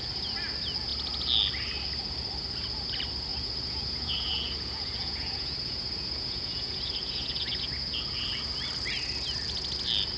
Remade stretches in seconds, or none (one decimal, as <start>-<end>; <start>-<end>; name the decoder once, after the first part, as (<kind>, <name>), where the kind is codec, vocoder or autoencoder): 3.3-7.7 (vocoder, Vocos)

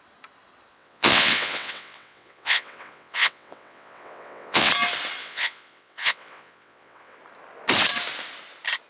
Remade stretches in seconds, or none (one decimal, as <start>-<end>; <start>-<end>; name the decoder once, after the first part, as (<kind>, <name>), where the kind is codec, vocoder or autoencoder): 0.7-4.7 (vocoder, WaveNeXt); 5.2-7.2

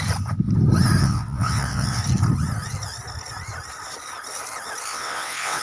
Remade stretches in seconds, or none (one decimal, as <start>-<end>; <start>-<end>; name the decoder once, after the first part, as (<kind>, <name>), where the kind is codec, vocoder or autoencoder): 1.0-2.0 (vocoder, WaveNeXt); 4.9-5.6

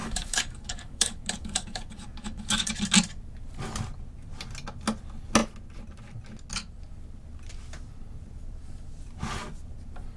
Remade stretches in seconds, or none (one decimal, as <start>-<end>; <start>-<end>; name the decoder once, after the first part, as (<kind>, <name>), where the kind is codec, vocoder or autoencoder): 0.0-2.7 (codec, DAC)